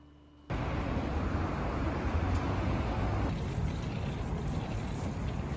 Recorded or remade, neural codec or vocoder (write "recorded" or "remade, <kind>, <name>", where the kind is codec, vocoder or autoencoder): recorded